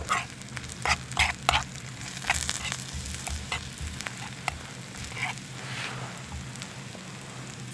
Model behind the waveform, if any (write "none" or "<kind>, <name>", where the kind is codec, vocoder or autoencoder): none